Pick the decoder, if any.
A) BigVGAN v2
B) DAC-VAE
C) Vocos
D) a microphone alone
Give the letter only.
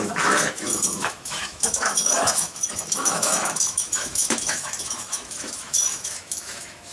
B